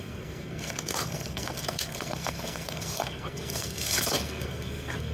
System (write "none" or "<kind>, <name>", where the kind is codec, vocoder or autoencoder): codec, SNAC